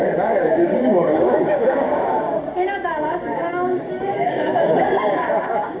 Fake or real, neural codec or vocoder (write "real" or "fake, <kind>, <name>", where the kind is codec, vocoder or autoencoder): fake, codec, DAC